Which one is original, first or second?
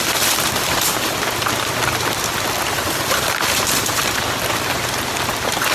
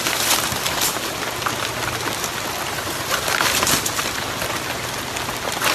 second